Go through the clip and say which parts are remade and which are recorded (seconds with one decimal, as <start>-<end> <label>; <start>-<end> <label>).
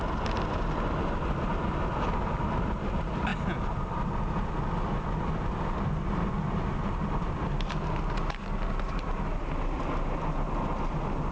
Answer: 0.0-11.3 recorded